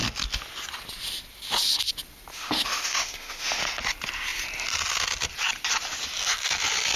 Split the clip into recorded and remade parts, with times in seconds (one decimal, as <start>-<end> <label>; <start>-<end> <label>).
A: 0.0-2.3 recorded; 2.3-3.6 remade; 3.6-7.0 recorded